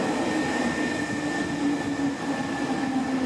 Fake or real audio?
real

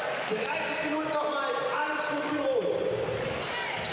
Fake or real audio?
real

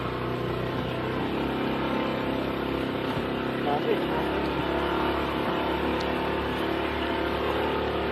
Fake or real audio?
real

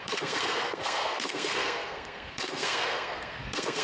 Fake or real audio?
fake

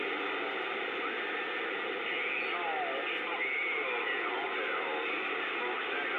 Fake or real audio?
real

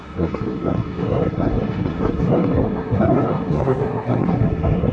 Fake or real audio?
fake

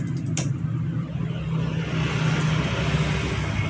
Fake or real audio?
real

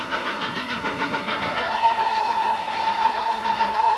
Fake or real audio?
fake